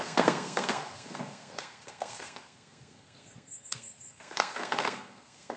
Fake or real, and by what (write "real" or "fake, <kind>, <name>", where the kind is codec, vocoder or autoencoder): fake, codec, SNAC